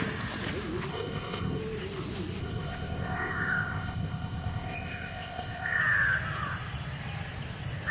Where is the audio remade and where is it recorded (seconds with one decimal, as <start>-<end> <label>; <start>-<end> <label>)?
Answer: 0.0-0.9 recorded; 0.9-1.6 remade; 1.6-2.4 recorded; 2.4-5.8 remade; 5.8-7.9 recorded